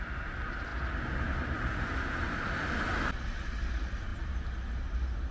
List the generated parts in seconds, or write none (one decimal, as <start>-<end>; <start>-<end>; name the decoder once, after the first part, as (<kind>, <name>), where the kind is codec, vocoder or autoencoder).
none